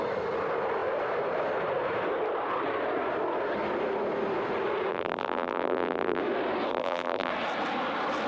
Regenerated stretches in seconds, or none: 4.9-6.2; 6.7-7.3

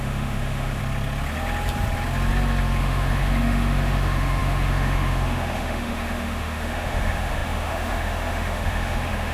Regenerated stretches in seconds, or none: 0.0-0.8; 2.8-9.3

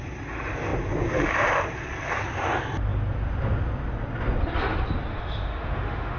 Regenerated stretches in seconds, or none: 5.1-6.2

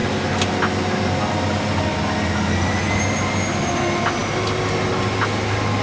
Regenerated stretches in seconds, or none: none

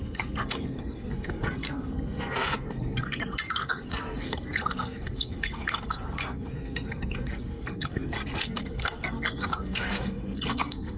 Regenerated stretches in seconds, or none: 0.0-11.0

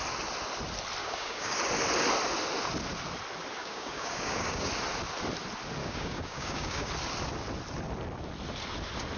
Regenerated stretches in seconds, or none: 1.0-1.6; 3.6-4.7; 5.8-6.9

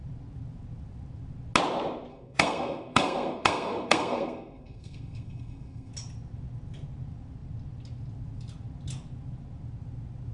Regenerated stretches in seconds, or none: 2.1-5.9

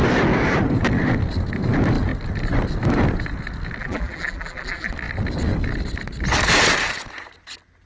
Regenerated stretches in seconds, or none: 3.8-4.9